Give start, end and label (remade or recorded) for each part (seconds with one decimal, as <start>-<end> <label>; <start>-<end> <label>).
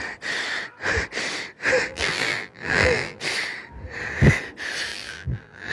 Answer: 0.0-1.9 recorded; 1.9-3.2 remade; 3.2-4.9 recorded; 4.9-5.7 remade